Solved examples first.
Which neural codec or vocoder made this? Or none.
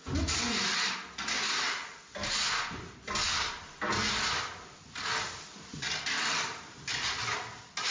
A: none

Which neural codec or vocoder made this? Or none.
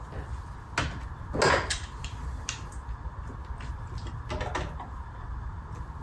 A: none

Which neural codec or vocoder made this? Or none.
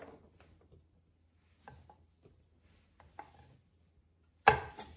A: none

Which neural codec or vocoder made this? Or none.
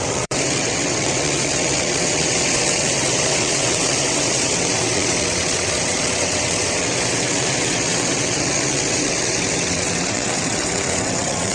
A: vocoder, WaveNeXt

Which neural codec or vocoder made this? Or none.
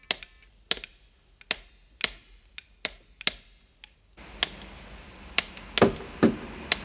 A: none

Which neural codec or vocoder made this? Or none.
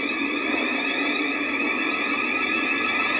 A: none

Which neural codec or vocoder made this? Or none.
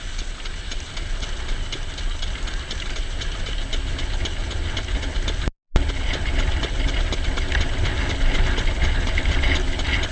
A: none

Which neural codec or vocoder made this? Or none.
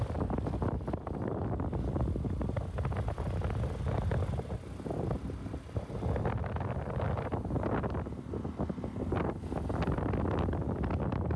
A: none